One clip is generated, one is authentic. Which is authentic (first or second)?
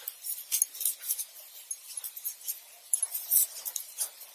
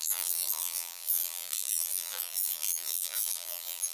first